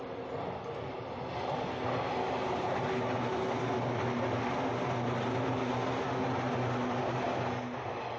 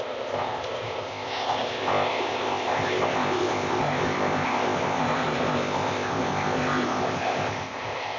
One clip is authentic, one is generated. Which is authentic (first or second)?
first